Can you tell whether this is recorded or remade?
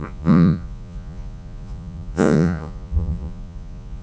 remade